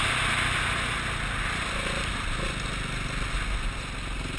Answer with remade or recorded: recorded